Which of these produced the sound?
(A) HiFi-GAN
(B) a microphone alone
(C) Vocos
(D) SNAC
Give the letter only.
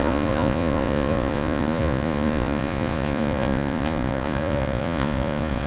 C